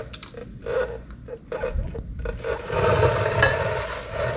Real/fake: real